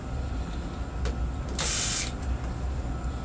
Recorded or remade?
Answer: recorded